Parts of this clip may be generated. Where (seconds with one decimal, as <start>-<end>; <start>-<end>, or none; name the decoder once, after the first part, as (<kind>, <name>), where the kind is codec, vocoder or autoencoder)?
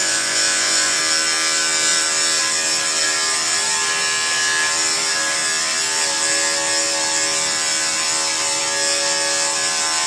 0.0-1.0 (vocoder, Vocos)